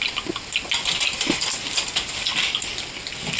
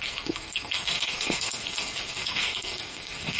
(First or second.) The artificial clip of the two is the second